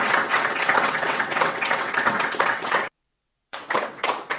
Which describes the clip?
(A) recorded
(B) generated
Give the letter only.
B